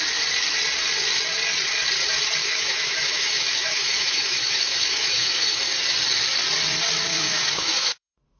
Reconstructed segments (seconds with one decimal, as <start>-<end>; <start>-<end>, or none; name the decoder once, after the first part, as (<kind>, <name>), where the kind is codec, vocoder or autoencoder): 2.4-5.6 (autoencoder, DAC-VAE); 7.1-8.4